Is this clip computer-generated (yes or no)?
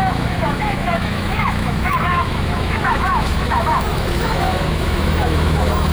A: yes